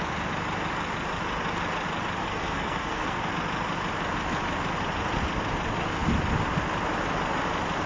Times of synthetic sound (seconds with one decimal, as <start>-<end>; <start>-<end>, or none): 2.2-3.3

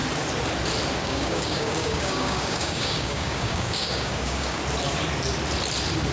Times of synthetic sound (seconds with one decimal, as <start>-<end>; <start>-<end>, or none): 1.0-4.6

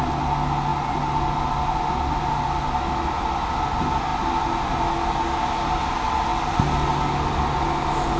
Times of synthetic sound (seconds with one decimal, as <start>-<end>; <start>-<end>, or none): none

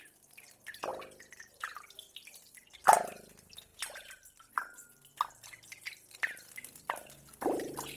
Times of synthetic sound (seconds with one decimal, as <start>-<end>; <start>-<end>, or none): none

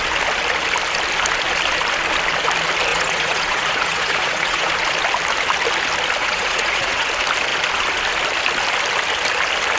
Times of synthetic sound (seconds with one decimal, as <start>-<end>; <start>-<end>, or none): 2.9-4.7; 6.2-7.1